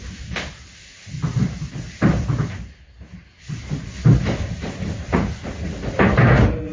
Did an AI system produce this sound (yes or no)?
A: no